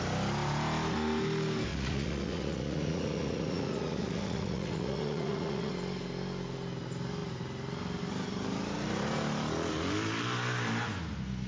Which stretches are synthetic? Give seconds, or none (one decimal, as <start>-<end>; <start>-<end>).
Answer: 1.7-5.7